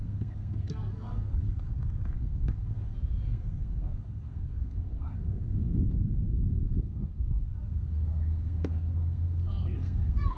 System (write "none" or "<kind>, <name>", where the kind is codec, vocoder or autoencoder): codec, SNAC